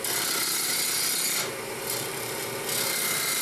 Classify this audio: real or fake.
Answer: real